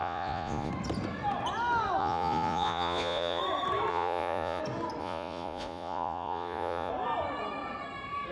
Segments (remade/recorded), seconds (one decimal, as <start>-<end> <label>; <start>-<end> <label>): 0.0-0.7 remade; 0.7-2.0 recorded; 2.0-3.4 remade; 3.4-3.9 recorded; 3.9-4.6 remade; 4.6-5.0 recorded; 5.0-6.9 remade; 6.9-8.3 recorded